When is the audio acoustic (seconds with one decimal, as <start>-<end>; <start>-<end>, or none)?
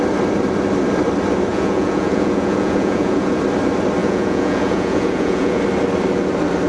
0.0-1.5; 3.4-4.0; 5.6-6.7